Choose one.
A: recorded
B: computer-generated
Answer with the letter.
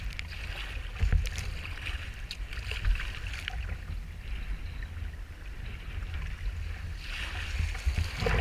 A